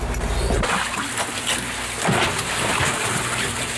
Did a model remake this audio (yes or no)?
no